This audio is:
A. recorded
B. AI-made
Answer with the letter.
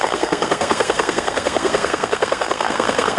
B